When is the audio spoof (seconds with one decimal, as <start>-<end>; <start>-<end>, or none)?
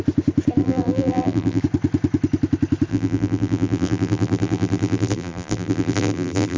0.6-1.6; 2.9-6.6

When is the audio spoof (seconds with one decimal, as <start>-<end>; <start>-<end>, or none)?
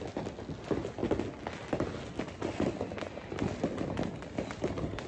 none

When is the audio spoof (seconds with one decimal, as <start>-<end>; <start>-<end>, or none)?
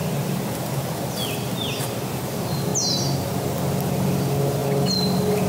2.1-2.7; 3.2-5.5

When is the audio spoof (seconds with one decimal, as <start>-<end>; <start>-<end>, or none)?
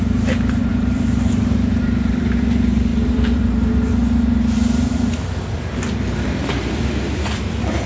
0.0-3.9; 5.5-7.9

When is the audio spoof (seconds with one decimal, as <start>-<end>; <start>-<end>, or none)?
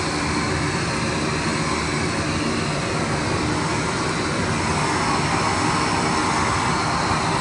none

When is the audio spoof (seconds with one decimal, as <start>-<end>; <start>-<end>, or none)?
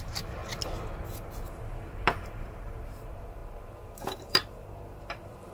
0.0-0.4; 1.5-5.5